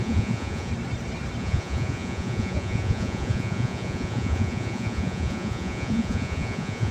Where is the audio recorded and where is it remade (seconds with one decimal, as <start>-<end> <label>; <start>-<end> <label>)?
0.0-0.7 remade; 0.7-1.4 recorded; 1.4-6.9 remade